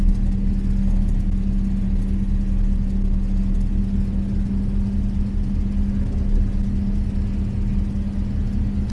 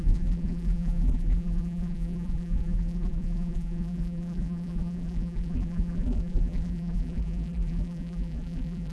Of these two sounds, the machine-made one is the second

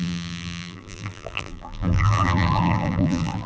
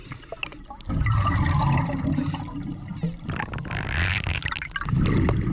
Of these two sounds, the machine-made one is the first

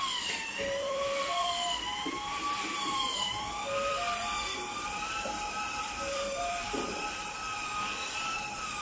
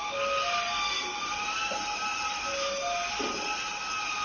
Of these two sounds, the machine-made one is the first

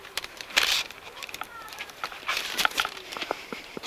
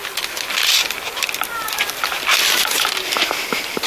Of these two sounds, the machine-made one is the first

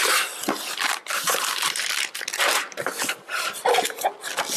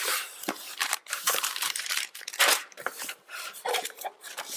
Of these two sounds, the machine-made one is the second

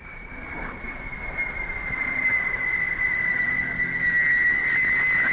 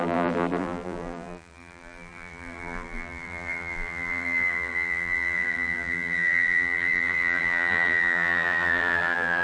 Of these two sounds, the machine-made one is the second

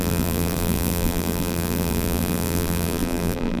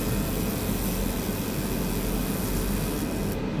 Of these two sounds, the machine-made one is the first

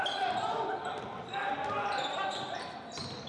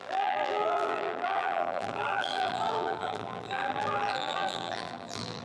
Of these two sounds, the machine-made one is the second